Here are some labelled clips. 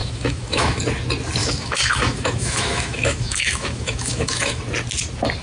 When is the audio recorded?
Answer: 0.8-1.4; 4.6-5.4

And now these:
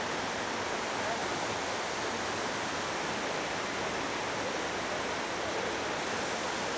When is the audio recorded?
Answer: 0.0-6.8

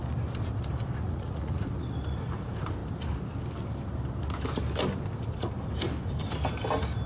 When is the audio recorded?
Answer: 0.0-0.9; 1.7-7.1

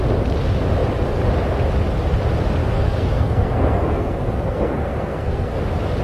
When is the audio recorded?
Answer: 0.0-2.6; 5.6-6.0

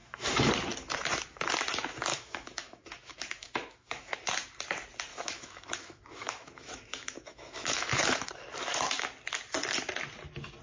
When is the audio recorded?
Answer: 0.5-2.1; 4.1-5.1; 8.3-10.6